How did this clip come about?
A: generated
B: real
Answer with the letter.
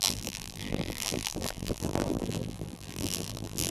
A